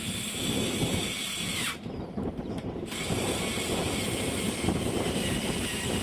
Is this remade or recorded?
remade